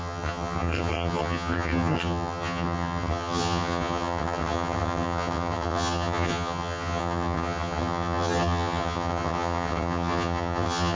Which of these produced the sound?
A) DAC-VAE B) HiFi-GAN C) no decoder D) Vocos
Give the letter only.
B